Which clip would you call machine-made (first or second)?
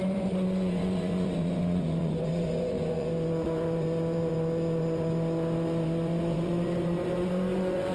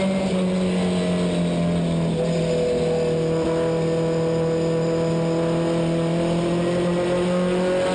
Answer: first